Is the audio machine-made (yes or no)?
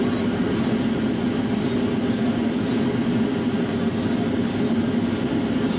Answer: no